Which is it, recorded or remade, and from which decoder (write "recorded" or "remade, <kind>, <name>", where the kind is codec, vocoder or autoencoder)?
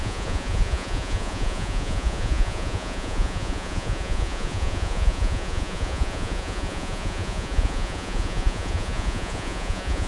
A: remade, vocoder, Vocos